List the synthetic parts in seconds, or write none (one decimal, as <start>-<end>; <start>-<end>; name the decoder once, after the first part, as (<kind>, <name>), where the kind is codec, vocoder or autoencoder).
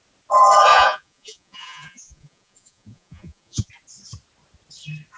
0.7-3.7 (vocoder, Vocos)